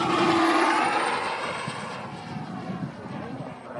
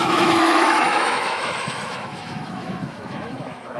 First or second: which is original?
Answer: first